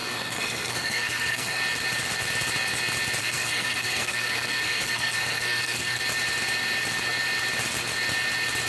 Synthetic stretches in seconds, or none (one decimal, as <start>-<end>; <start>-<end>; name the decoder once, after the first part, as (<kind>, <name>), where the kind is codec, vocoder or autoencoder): 0.0-1.6 (codec, SNAC); 3.2-6.0